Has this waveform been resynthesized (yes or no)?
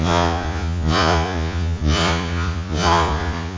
yes